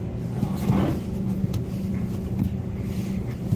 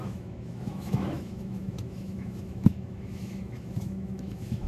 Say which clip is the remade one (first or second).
second